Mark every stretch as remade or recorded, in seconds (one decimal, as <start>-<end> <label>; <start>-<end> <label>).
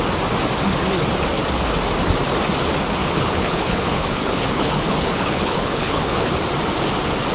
0.0-3.0 recorded; 3.0-6.3 remade; 6.3-7.3 recorded